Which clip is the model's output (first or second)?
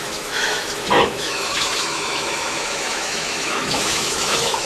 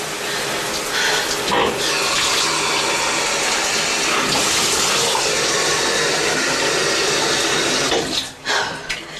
first